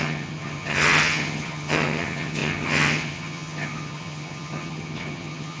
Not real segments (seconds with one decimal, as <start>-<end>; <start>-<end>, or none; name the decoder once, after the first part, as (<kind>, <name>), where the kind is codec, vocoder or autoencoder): 0.0-5.6 (vocoder, HiFi-GAN)